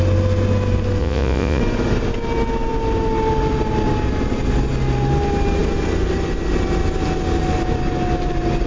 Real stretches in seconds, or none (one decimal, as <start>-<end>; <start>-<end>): 0.0-1.0; 1.6-8.7